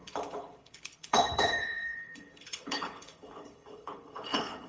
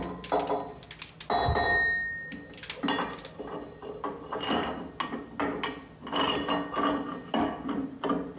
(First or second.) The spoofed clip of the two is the first